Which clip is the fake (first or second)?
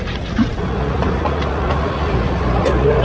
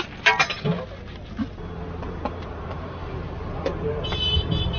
first